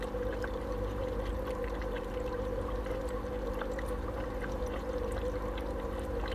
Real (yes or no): no